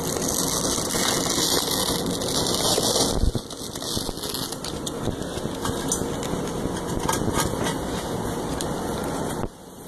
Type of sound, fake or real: real